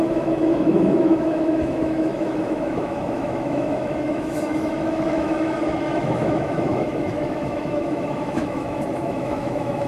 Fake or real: fake